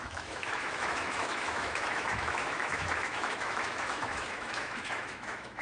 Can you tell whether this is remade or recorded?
remade